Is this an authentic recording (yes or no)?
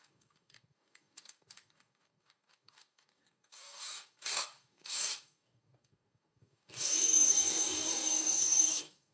no